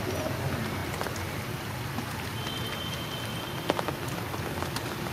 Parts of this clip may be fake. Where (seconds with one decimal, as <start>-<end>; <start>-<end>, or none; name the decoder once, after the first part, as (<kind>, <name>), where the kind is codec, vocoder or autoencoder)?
none